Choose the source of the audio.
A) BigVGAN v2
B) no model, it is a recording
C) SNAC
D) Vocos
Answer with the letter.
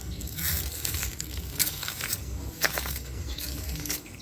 C